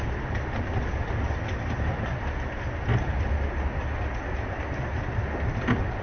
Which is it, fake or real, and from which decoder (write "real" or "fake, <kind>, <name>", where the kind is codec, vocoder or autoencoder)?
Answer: real